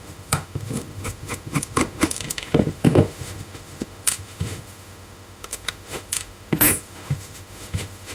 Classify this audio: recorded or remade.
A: remade